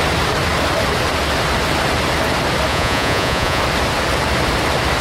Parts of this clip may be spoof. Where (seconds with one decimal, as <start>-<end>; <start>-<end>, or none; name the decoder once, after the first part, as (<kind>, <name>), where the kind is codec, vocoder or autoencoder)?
2.7-3.6 (vocoder, Vocos)